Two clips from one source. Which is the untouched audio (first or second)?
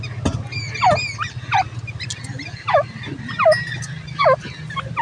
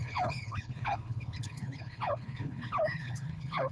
first